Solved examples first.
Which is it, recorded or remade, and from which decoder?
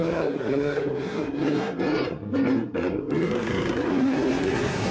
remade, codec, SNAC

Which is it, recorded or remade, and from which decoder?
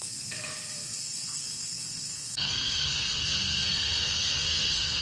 remade, codec, SNAC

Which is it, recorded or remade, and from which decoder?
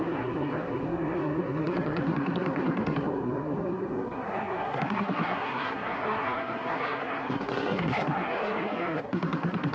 remade, codec, SNAC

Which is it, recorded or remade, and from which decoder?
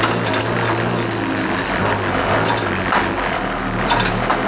recorded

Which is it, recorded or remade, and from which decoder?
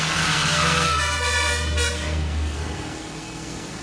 remade, codec, SNAC